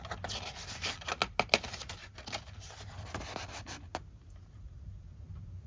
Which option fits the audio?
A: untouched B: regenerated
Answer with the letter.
A